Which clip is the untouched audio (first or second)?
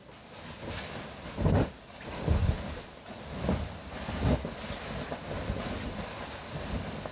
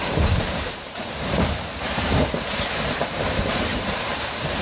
first